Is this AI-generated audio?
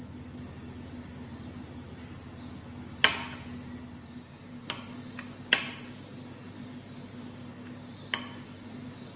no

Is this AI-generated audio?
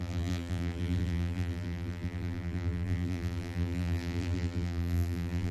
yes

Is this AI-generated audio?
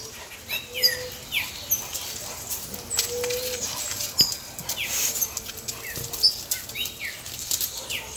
no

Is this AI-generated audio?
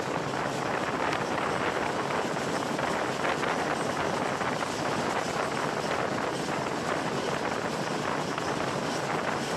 no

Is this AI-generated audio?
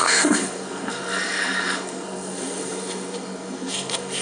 yes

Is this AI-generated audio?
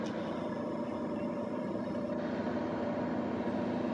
no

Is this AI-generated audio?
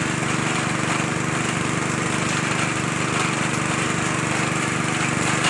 no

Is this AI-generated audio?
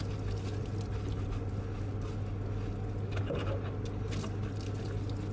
no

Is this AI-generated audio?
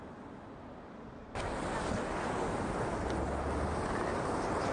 no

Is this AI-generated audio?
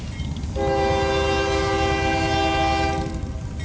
no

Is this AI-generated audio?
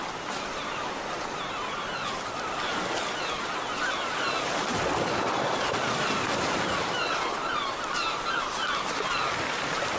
yes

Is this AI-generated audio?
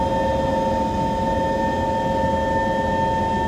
no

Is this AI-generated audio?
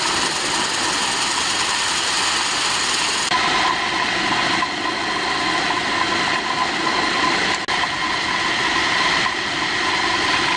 no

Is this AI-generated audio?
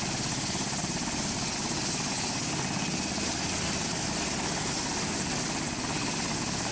no